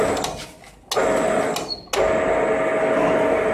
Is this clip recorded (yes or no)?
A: yes